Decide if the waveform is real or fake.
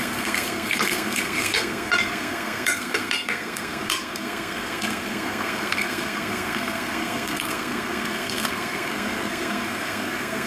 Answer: fake